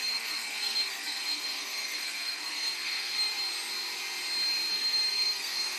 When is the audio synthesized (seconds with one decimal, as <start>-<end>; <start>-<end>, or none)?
0.0-3.3; 4.7-5.8